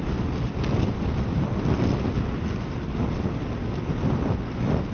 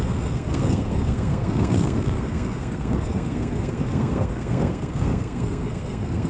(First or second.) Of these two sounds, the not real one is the second